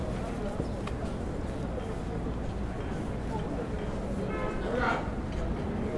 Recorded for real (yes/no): yes